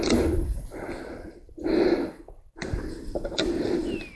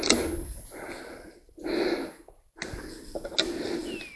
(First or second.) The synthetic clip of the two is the first